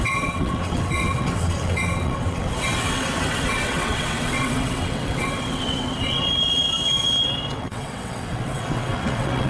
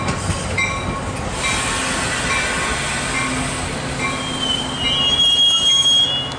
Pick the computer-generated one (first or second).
first